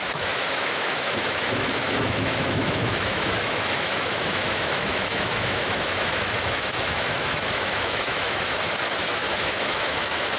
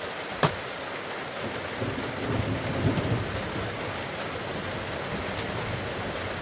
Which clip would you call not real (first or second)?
first